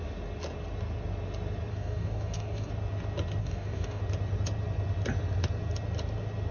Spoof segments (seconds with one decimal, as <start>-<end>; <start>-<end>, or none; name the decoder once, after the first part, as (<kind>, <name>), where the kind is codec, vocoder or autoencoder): 1.7-2.7 (codec, DAC); 3.4-4.0